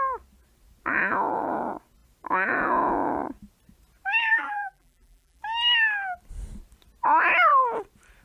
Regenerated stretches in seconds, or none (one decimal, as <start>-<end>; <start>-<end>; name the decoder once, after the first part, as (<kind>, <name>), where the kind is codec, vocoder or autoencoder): 4.3-5.4 (vocoder, BigVGAN v2)